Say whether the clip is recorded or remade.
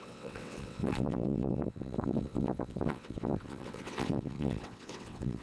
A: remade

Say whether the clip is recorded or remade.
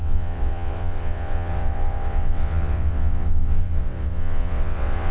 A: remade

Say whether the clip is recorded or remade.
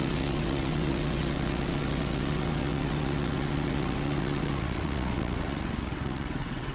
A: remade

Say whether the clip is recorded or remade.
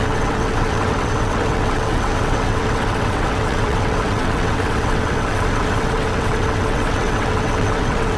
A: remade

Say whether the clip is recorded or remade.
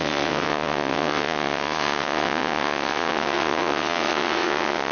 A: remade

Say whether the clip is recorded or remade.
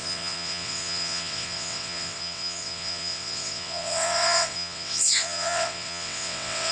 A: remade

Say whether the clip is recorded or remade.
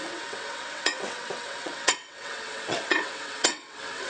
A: remade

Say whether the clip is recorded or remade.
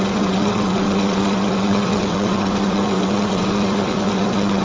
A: remade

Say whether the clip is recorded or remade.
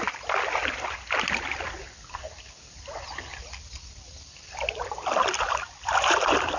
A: recorded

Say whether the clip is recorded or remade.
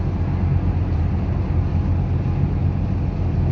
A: recorded